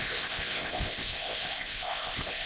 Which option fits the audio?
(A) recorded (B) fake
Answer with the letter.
B